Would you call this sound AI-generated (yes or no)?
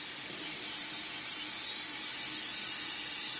no